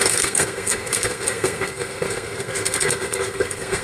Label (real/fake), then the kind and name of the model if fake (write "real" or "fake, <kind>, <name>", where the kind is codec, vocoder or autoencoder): fake, codec, SNAC